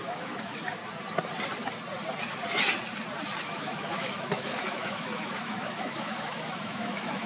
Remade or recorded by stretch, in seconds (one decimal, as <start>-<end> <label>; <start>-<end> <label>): 0.0-0.8 remade; 0.8-3.4 recorded; 3.4-7.3 remade